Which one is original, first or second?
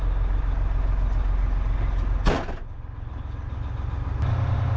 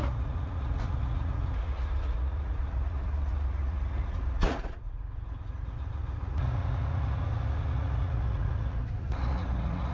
first